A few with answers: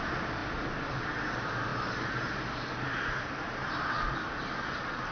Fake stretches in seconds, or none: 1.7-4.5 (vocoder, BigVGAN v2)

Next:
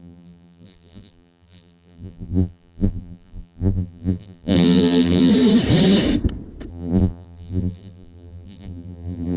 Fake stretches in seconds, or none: 0.0-5.3 (vocoder, BigVGAN v2); 6.7-9.4

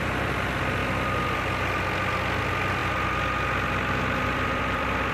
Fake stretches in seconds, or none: 0.0-0.8 (vocoder, BigVGAN v2); 2.4-2.8; 4.2-5.1

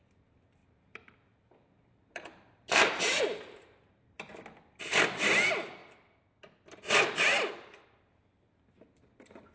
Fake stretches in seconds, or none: 0.6-4.3 (vocoder, BigVGAN v2)

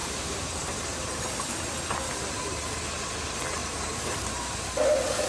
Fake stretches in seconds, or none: 0.0-0.6 (vocoder, BigVGAN v2); 3.6-4.6

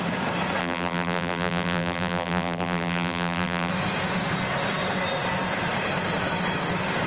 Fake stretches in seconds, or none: 0.6-3.7 (vocoder, BigVGAN v2)